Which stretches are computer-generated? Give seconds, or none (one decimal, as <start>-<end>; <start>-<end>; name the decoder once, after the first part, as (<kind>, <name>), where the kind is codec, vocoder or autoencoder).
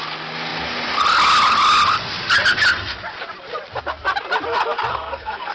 4.9-5.5 (codec, SNAC)